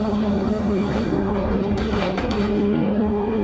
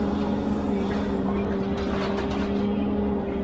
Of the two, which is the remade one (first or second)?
first